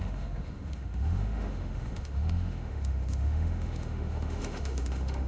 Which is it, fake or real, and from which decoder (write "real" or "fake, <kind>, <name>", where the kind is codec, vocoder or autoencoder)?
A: fake, autoencoder, DAC-VAE